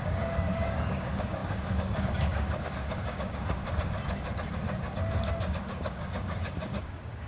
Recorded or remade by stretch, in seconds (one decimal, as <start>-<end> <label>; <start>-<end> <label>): 0.0-3.6 remade; 3.6-5.4 recorded; 5.4-7.3 remade